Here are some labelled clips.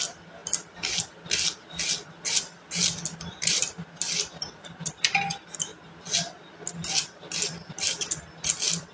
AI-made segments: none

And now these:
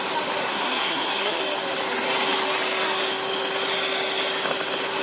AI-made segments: 0.4-1.4 (codec, SNAC)